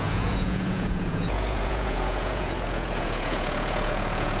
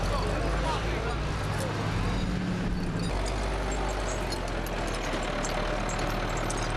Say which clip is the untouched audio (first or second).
second